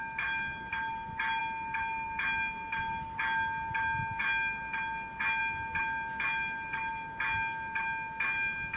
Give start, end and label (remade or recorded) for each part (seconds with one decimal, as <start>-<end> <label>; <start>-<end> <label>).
0.0-8.8 recorded